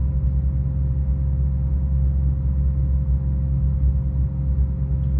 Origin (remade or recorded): recorded